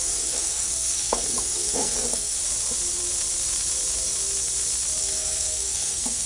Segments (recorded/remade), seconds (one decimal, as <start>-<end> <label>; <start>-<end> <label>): 0.0-2.4 remade; 2.4-5.0 recorded; 5.0-6.3 remade